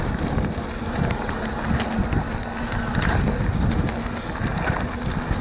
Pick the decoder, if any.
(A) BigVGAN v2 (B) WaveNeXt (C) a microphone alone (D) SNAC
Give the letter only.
C